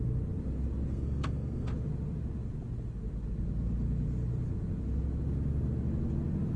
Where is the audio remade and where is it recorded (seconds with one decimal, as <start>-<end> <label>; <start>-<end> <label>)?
0.0-0.9 recorded; 0.9-1.7 remade; 1.7-6.6 recorded